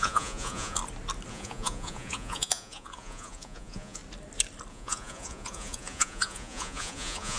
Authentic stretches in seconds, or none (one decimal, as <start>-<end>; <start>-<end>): 0.8-1.3; 4.0-4.7